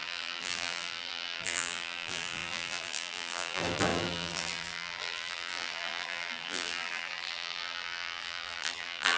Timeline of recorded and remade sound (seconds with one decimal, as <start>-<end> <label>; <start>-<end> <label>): 0.0-9.2 remade